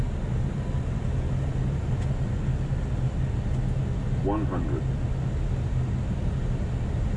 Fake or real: real